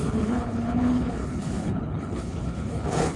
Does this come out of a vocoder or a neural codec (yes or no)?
yes